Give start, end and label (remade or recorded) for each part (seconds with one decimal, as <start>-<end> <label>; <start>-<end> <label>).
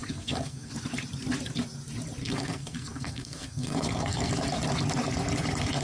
0.0-0.7 remade; 0.7-2.2 recorded; 2.2-4.3 remade; 4.3-5.8 recorded